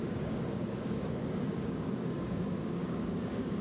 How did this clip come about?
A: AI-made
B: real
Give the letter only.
A